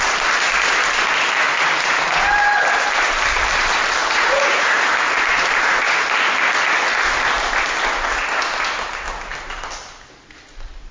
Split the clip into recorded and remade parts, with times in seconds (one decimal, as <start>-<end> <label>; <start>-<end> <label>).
0.0-4.0 recorded; 4.0-4.9 remade; 4.9-10.9 recorded